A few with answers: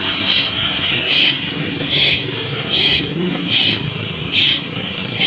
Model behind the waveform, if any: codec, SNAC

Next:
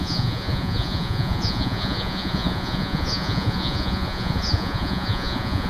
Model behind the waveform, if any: vocoder, Vocos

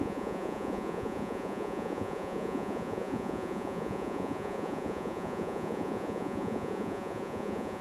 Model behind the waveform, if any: vocoder, Vocos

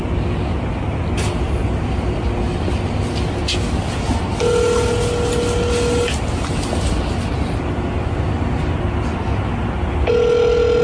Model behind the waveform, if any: none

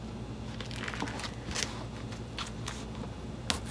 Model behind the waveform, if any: none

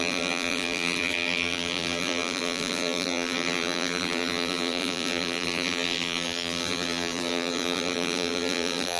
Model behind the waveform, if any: vocoder, BigVGAN v2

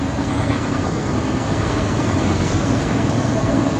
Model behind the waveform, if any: codec, SNAC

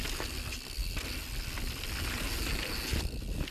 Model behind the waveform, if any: none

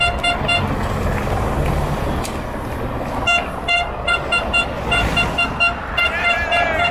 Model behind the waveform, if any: none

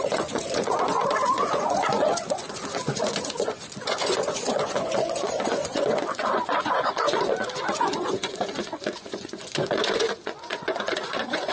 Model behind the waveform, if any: vocoder, Vocos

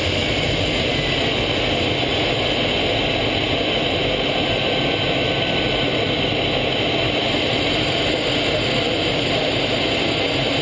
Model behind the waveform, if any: none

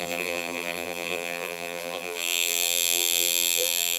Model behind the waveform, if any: vocoder, BigVGAN v2